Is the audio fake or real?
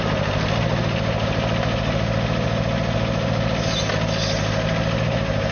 real